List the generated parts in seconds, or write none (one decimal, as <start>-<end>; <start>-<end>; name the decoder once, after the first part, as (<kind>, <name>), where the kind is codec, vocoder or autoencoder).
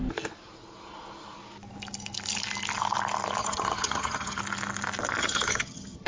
3.4-4.4 (vocoder, HiFi-GAN); 5.2-6.1